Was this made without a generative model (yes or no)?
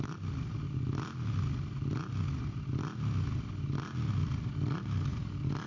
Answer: yes